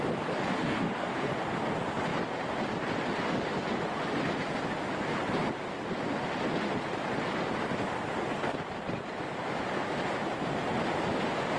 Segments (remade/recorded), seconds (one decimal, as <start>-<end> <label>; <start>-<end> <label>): 0.0-0.6 recorded; 0.6-1.3 remade; 1.3-11.6 recorded

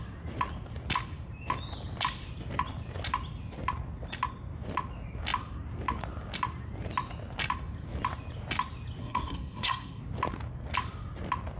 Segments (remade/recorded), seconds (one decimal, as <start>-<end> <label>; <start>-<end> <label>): 0.0-9.0 recorded; 9.0-10.0 remade; 10.0-11.6 recorded

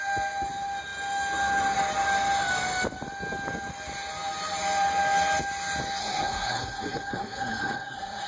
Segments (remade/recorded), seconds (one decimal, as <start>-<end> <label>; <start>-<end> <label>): 0.0-6.0 recorded; 6.0-8.3 remade